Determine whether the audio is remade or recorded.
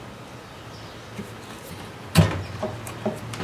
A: recorded